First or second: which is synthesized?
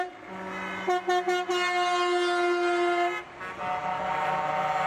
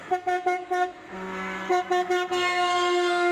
second